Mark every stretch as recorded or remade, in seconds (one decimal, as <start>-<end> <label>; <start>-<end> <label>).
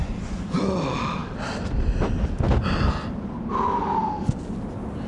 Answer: 0.0-0.6 remade; 0.6-5.1 recorded